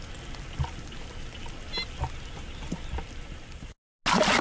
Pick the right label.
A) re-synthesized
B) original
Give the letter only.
B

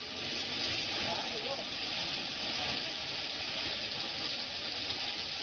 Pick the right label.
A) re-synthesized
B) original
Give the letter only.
B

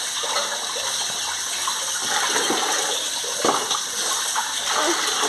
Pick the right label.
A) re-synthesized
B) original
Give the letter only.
B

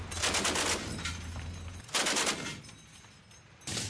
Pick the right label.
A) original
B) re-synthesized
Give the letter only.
A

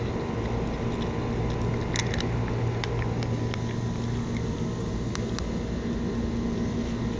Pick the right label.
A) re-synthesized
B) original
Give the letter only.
B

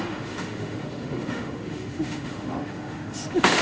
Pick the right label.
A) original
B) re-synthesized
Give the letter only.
B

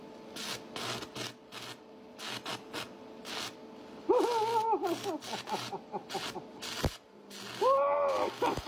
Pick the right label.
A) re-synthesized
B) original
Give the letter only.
B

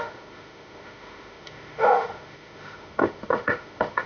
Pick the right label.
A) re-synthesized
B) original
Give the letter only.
A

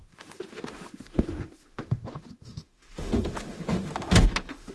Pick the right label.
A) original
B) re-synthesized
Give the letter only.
B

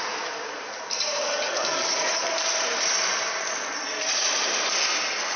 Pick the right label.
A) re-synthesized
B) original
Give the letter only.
B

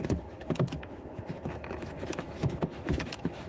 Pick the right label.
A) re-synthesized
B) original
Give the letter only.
A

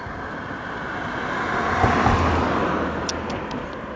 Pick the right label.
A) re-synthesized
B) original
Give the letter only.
B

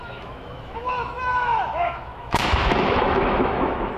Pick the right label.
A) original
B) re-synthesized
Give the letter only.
B